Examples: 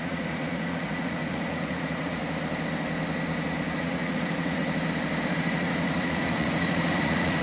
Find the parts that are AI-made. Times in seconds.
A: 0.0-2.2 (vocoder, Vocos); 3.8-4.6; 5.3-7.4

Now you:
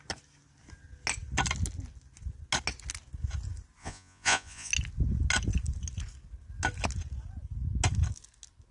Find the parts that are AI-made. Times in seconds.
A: 3.8-4.7 (vocoder, Vocos)

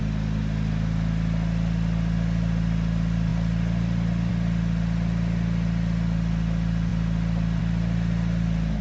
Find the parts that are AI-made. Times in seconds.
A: none